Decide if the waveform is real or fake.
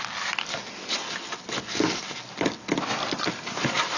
real